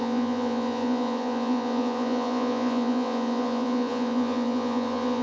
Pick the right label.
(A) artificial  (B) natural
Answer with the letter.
A